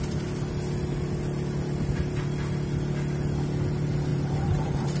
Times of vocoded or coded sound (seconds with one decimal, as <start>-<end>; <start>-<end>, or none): 4.1-5.0